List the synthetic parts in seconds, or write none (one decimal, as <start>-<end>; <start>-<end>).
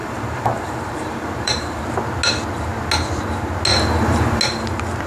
0.0-1.8; 3.7-4.4